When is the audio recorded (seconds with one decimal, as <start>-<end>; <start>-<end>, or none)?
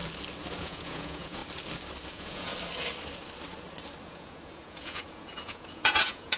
0.0-0.6; 1.4-2.1; 2.5-4.0